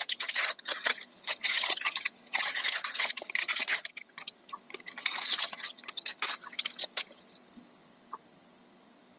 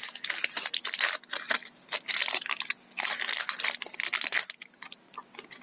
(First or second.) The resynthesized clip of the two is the first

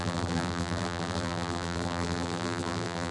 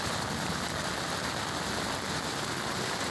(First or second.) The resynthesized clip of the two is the first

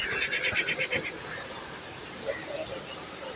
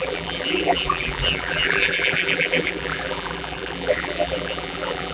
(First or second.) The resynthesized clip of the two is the second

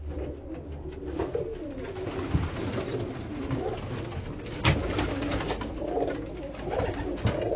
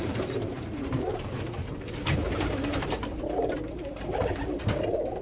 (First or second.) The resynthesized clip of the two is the second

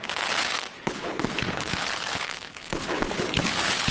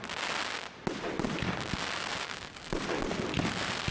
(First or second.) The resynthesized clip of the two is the first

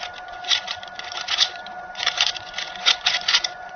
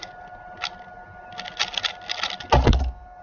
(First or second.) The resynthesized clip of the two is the first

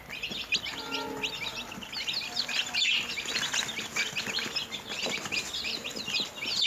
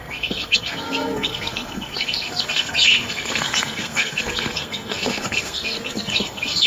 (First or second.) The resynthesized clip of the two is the second